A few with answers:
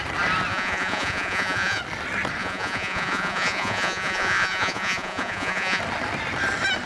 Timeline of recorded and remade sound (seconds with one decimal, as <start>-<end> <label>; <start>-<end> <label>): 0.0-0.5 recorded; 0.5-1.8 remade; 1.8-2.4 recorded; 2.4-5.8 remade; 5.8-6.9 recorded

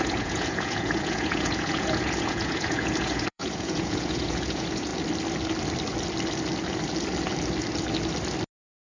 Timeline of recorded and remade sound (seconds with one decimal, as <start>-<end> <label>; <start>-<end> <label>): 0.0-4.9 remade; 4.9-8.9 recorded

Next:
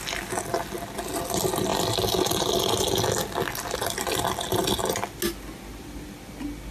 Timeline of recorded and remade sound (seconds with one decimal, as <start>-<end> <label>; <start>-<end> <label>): 0.0-6.7 recorded